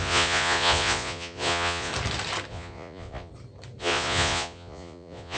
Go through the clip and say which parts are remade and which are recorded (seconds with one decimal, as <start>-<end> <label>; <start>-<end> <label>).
0.0-1.9 remade; 1.9-2.5 recorded; 2.5-3.3 remade; 3.3-3.8 recorded; 3.8-5.4 remade